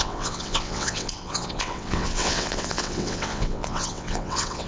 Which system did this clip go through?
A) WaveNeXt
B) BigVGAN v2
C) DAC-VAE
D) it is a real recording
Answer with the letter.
A